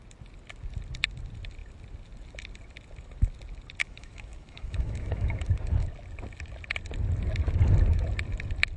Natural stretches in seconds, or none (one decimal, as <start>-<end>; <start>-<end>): 0.0-3.8; 5.5-8.8